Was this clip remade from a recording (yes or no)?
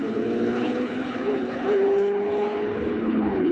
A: yes